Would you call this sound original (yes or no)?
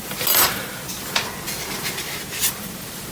yes